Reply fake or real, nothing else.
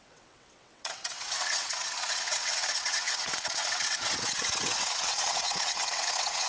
fake